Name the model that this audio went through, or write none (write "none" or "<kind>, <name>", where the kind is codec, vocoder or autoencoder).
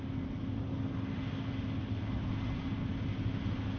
none